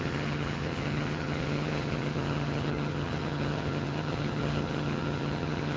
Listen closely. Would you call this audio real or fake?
fake